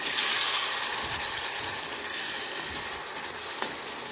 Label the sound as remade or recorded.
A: recorded